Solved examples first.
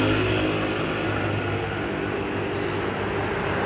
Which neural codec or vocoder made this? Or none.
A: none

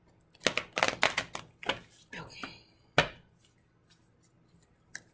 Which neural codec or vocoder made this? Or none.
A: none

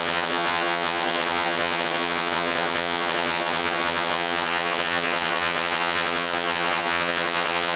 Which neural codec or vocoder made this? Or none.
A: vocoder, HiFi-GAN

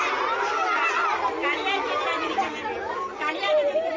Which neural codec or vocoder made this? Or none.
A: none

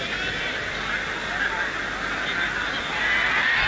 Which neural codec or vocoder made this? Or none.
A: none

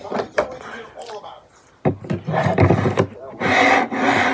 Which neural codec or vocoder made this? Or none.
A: none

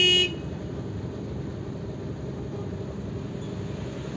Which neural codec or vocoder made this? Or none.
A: none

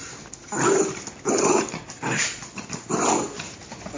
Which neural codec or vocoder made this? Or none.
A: none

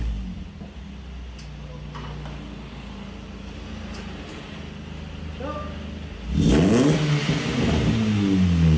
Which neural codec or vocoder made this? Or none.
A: none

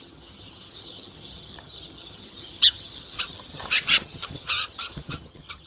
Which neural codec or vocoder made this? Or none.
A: vocoder, HiFi-GAN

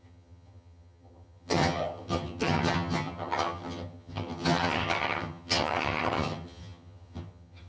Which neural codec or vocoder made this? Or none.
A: vocoder, HiFi-GAN